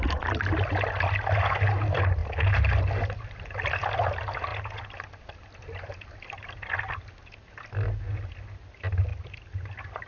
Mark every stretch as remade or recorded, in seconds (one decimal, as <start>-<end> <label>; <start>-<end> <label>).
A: 0.0-9.1 recorded; 9.1-9.7 remade; 9.7-10.1 recorded